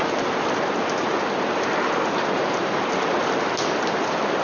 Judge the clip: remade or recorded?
recorded